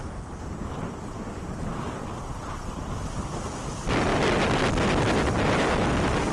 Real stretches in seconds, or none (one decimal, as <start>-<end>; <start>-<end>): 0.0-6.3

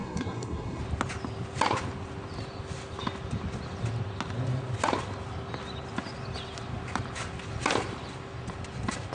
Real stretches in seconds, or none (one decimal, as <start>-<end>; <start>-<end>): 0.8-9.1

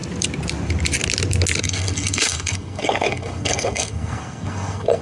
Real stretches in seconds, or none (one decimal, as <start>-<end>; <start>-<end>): 0.0-1.6